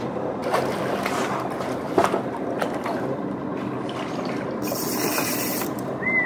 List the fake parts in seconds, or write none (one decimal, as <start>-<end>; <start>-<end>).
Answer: 0.0-0.4; 3.0-3.5; 5.1-6.3